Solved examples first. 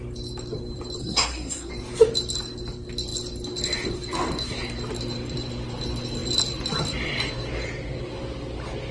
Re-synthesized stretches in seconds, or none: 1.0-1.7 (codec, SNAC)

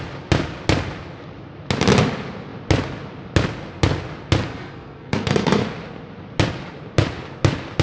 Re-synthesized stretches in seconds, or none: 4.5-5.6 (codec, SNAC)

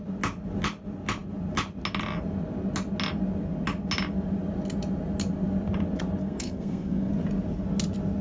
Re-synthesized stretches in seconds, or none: 6.2-7.1 (codec, SNAC)

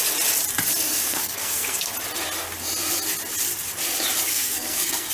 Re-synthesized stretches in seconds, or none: 1.0-1.9 (codec, SNAC); 4.3-5.1

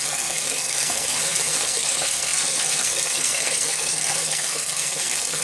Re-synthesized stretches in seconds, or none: 0.0-5.4 (codec, SNAC)

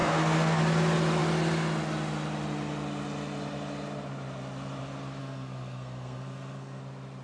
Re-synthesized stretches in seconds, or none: 0.0-0.6 (codec, SNAC); 5.2-6.8